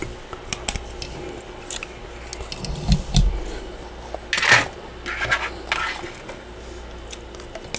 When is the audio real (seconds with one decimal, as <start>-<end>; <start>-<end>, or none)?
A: 0.0-7.8